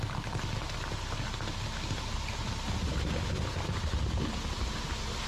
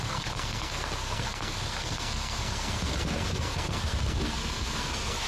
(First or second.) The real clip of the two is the first